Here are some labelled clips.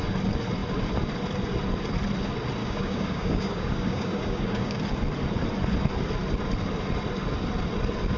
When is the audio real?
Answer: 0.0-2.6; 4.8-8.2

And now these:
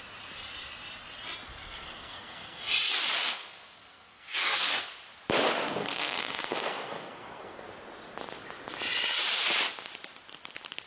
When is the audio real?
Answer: 0.0-1.6; 2.6-3.3; 4.9-5.8; 7.7-10.9

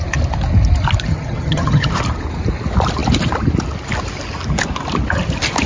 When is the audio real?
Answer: 0.0-1.1; 1.9-5.7

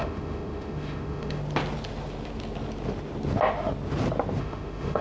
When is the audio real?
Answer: 1.4-4.4

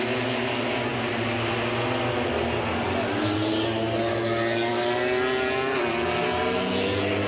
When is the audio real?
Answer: 0.0-7.3